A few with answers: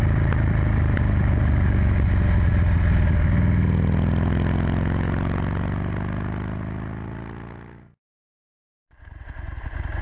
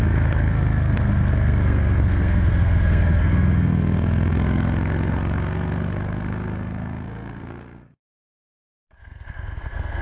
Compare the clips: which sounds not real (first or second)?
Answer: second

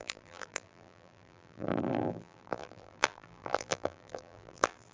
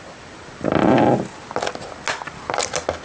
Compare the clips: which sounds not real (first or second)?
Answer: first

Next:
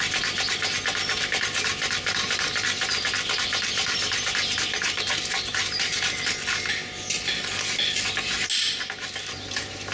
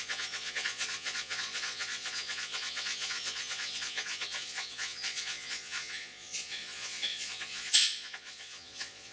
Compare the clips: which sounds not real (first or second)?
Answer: second